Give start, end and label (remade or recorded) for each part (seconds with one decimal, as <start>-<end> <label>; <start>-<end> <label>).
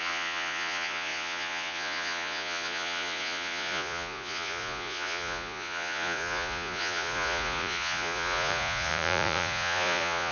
0.0-10.3 remade